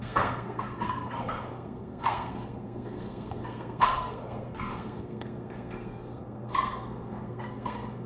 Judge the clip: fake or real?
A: fake